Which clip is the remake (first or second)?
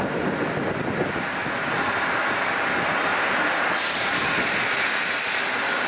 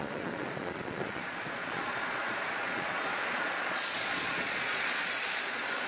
second